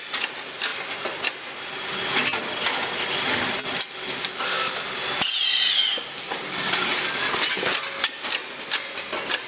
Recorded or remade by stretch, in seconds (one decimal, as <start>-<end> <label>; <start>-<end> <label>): 0.0-9.5 recorded